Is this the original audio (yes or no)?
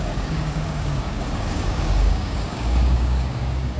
no